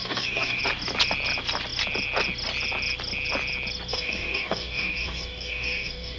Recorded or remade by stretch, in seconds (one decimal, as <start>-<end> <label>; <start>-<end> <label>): 0.0-0.6 remade; 0.6-3.9 recorded; 3.9-6.2 remade